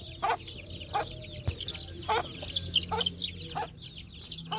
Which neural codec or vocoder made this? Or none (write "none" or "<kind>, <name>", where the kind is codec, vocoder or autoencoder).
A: none